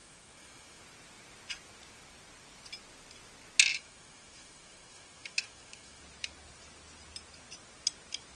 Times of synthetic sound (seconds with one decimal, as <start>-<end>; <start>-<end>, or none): 0.0-0.8; 3.7-6.0